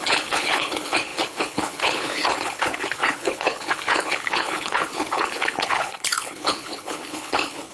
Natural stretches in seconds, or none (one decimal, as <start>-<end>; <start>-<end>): none